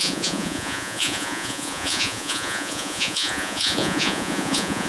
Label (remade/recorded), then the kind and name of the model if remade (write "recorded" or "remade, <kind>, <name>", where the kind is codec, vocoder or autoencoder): remade, vocoder, Vocos